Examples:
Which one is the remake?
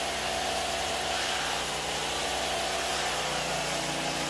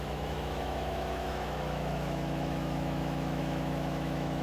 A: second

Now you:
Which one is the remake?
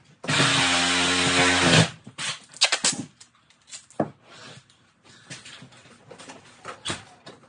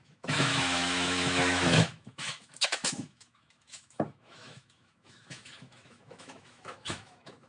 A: second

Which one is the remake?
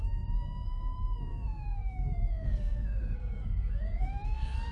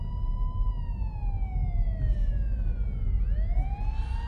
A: first